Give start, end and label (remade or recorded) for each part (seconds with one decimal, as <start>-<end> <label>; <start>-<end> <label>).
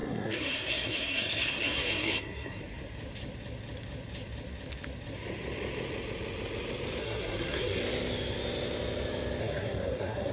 0.0-2.6 remade; 2.6-7.0 recorded; 7.0-7.8 remade; 7.8-9.4 recorded; 9.4-10.3 remade